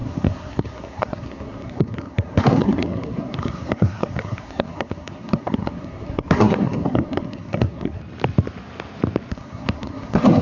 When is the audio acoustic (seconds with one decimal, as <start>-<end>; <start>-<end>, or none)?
8.0-9.3